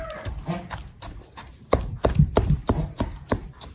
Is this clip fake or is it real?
real